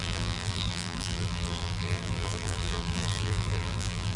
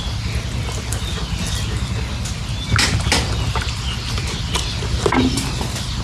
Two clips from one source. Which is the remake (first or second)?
first